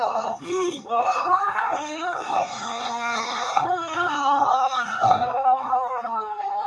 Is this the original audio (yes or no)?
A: no